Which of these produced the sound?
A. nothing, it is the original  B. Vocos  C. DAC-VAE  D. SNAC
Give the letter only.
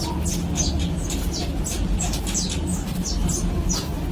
A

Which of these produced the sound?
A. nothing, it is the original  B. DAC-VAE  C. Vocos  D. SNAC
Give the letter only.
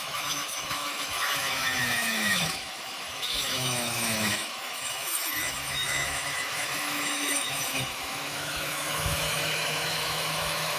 B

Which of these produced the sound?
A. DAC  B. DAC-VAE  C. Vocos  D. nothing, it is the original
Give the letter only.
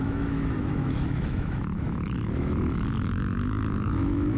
B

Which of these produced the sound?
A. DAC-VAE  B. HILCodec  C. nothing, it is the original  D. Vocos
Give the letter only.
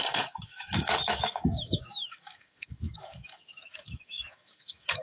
A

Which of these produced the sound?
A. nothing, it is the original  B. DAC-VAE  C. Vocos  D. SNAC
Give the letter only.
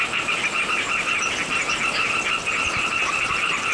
A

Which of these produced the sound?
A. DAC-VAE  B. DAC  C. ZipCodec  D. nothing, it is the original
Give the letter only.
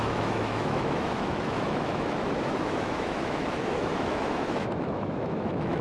A